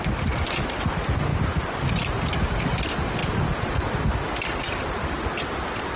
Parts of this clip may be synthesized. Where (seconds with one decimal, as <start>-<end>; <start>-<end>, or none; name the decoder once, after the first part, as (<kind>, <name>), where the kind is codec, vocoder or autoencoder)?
none